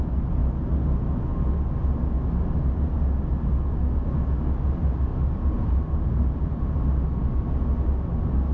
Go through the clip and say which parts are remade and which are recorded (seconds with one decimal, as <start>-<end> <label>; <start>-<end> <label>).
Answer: 0.0-5.1 recorded; 5.1-7.4 remade; 7.4-8.5 recorded